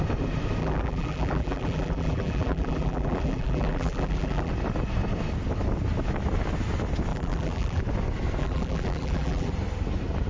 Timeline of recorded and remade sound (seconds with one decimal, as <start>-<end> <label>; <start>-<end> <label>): 0.0-0.6 recorded; 0.6-4.5 remade; 4.5-7.1 recorded; 7.1-7.8 remade; 7.8-8.4 recorded; 8.4-9.5 remade; 9.5-10.3 recorded